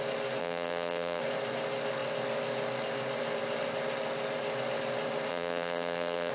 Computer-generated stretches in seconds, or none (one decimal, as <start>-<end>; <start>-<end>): 0.4-1.2; 5.3-6.3